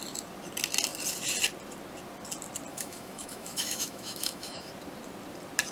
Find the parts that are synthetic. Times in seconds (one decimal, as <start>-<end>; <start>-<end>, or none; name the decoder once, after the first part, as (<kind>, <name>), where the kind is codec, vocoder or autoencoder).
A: 2.7-4.7 (autoencoder, DAC-VAE)